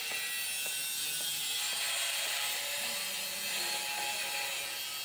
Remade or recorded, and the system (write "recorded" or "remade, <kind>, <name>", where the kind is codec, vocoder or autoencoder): recorded